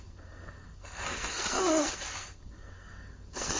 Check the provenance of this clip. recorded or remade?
remade